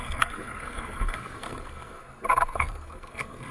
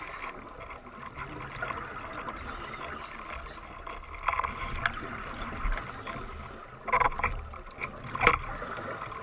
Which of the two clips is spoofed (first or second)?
first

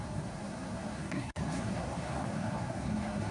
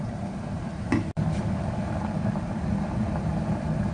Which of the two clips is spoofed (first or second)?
first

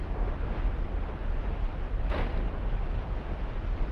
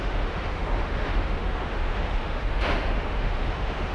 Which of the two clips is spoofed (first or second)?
second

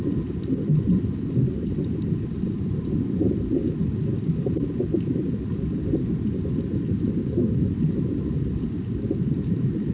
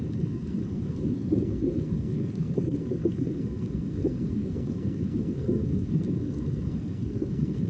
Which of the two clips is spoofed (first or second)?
second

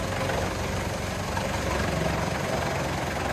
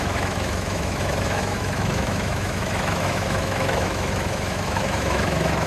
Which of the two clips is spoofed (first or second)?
second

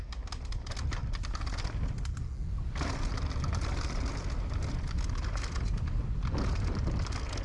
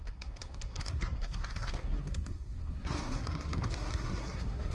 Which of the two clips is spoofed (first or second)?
second